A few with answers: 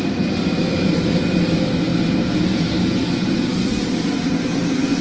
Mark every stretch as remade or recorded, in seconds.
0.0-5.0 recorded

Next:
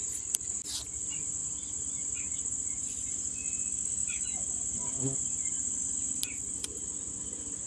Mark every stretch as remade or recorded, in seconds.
0.0-7.7 recorded

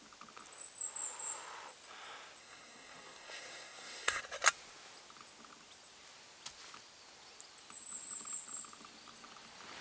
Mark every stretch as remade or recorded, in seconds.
0.0-2.4 recorded; 2.4-4.2 remade; 4.2-9.8 recorded

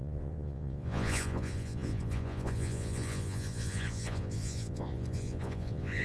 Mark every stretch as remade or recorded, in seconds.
0.0-6.0 remade

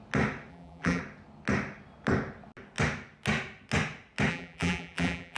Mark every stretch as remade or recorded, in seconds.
0.0-0.5 recorded; 0.5-1.0 remade; 1.0-4.3 recorded; 4.3-5.4 remade

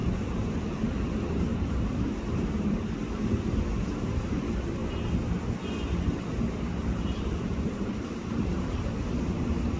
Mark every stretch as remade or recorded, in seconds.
0.0-4.8 remade; 4.8-6.9 recorded; 6.9-9.8 remade

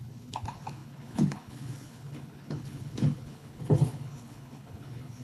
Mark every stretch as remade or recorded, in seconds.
0.0-5.2 remade